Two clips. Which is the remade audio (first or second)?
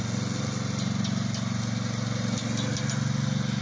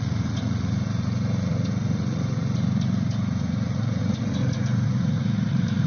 second